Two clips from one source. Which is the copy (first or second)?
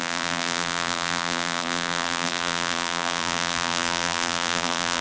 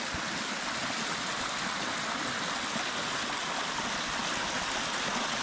first